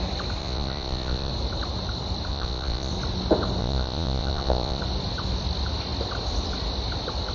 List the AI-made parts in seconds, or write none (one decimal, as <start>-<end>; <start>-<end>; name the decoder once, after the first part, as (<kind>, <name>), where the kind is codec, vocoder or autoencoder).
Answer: 0.4-1.3 (vocoder, Vocos); 2.3-2.9; 3.6-4.8